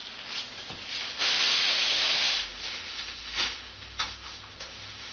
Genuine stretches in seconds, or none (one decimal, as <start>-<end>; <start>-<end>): 0.0-1.2

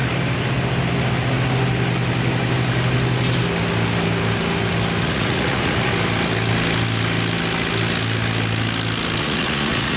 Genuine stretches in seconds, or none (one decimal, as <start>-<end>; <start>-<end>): 0.0-5.0; 5.9-9.2

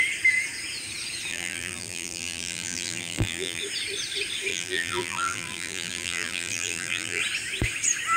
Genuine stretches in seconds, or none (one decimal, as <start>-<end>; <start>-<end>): 0.0-1.3; 3.6-4.5; 7.2-8.2

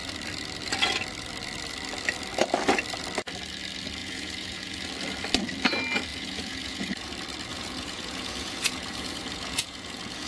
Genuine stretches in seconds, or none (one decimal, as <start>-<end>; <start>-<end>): 0.0-4.0; 4.9-6.1; 7.1-7.5

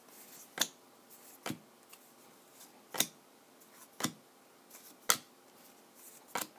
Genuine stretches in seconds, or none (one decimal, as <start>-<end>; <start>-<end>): 0.0-6.6